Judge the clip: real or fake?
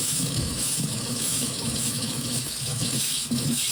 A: fake